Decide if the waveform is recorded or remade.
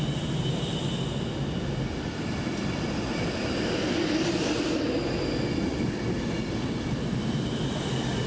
recorded